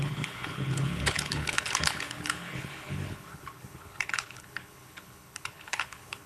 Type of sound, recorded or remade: remade